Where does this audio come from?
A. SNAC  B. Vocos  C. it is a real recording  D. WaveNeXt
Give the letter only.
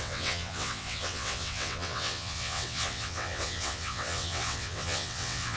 D